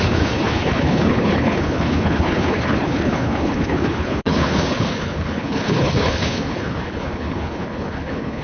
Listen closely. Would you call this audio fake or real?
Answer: fake